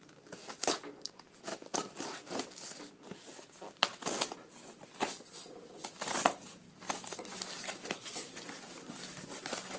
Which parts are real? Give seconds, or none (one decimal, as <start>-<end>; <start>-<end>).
0.0-9.8